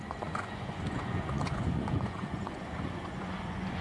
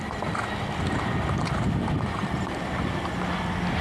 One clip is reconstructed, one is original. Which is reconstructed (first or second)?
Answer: first